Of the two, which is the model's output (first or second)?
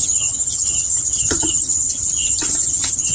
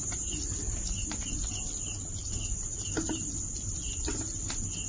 first